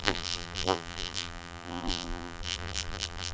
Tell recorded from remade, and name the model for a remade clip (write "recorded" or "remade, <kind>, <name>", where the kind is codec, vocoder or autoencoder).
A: remade, vocoder, BigVGAN v2